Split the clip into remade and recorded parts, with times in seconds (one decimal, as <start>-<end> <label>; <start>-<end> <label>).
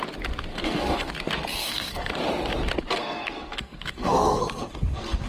0.0-0.5 recorded; 0.5-1.1 remade; 1.1-1.6 recorded; 1.6-2.1 remade; 2.1-3.0 recorded; 3.0-5.3 remade